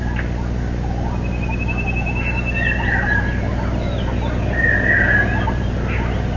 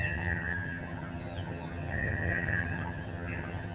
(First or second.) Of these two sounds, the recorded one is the first